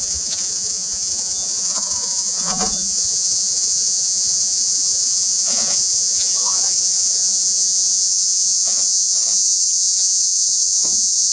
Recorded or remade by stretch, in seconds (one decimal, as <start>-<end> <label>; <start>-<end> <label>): 0.0-11.3 remade